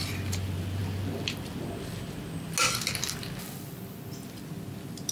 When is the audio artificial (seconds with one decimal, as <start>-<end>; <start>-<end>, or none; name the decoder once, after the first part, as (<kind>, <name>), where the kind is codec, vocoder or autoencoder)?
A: none